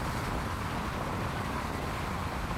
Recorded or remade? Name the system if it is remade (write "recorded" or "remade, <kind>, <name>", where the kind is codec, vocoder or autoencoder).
recorded